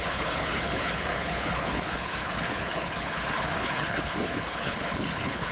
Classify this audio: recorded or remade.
remade